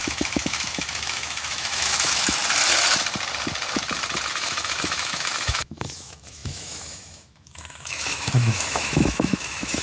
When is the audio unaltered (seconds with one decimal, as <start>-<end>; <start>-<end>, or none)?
2.4-4.3